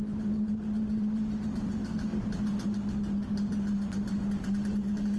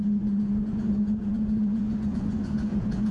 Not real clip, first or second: second